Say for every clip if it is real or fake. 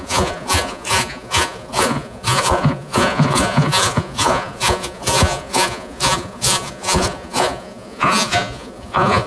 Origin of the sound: fake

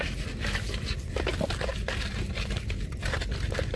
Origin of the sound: real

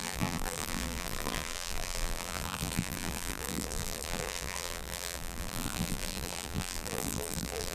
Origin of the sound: fake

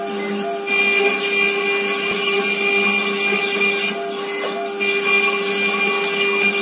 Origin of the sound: real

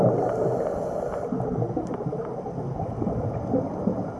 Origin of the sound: real